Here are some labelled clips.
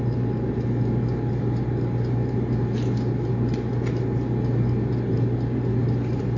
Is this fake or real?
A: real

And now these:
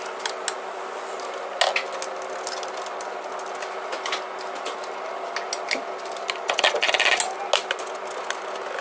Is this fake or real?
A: real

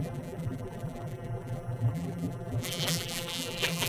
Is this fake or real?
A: fake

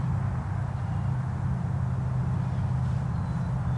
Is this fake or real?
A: real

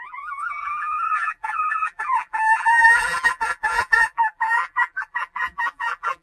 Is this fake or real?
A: fake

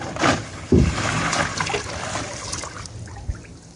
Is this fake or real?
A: real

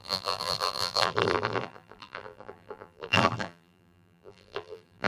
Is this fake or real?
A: fake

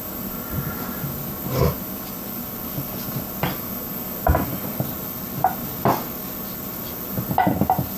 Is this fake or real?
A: real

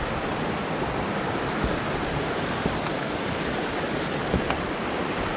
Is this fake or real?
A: real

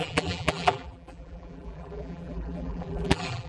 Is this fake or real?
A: fake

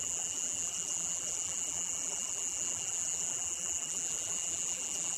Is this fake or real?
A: fake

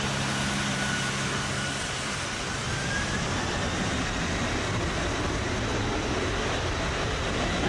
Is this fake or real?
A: real